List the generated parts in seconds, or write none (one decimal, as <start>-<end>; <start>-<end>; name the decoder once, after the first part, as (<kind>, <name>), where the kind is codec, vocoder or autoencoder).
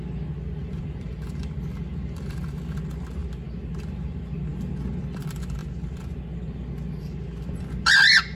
0.6-2.8 (vocoder, BigVGAN v2)